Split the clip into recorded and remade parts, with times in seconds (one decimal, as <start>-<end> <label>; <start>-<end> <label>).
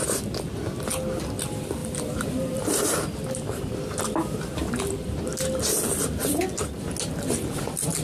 0.0-1.8 recorded; 1.8-2.8 remade; 2.8-8.0 recorded